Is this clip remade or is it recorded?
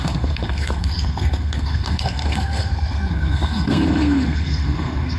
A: remade